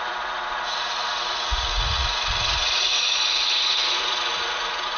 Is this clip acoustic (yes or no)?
no